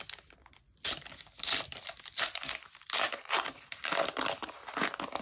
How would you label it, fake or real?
real